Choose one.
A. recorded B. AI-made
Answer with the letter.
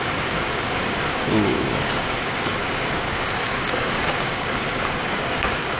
B